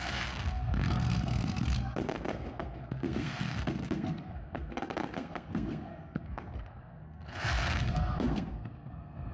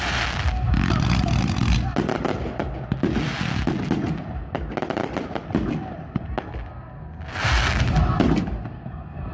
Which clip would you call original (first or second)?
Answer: second